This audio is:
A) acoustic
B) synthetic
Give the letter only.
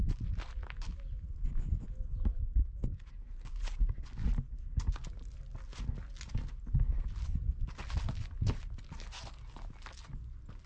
A